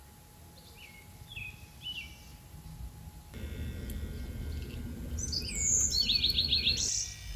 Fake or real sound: real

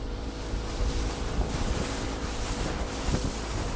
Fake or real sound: real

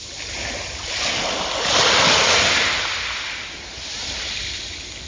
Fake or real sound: real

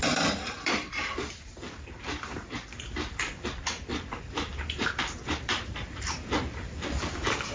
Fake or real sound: fake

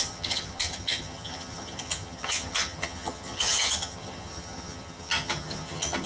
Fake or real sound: fake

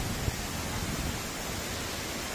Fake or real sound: real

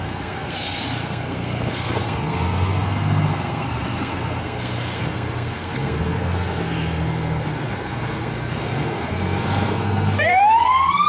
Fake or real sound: fake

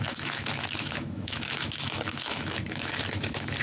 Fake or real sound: fake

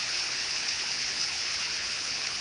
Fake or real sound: fake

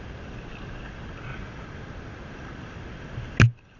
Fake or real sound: real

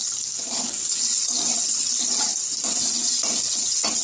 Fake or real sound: real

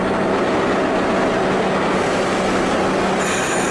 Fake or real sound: real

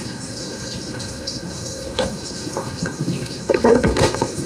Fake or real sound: fake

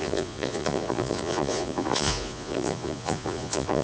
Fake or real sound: fake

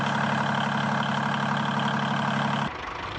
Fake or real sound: real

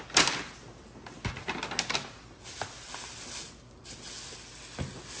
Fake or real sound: real